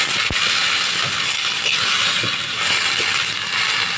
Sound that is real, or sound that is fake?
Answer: real